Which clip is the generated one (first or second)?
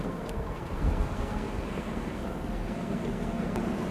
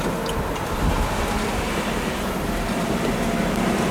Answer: first